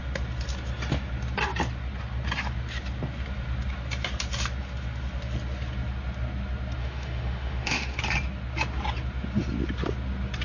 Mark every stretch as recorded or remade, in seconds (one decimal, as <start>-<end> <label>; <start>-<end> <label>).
0.0-6.8 recorded; 6.8-8.0 remade; 8.0-10.4 recorded